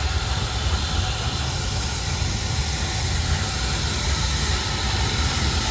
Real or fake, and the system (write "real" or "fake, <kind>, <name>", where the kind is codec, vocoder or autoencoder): real